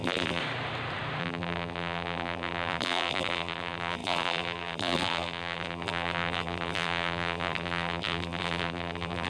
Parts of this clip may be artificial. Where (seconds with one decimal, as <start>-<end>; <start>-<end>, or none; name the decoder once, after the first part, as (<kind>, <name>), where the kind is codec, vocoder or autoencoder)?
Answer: 0.0-0.4 (vocoder, BigVGAN v2); 1.2-9.3